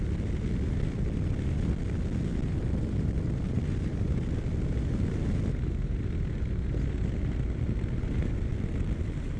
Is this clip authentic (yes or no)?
yes